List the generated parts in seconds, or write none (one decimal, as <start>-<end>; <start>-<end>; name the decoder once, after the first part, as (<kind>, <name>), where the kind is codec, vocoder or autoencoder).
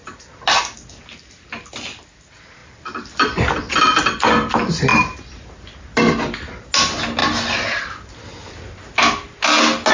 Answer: 2.6-3.7 (vocoder, BigVGAN v2)